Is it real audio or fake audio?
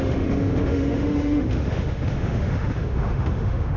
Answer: fake